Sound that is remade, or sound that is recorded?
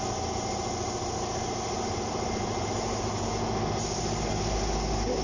recorded